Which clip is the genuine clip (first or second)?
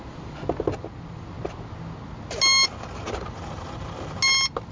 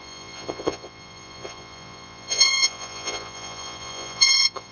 first